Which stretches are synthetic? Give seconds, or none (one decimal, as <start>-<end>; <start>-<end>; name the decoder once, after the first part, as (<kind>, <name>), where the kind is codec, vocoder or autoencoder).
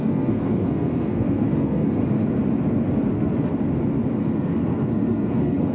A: 0.0-2.0 (codec, SNAC); 3.1-3.5; 4.2-5.7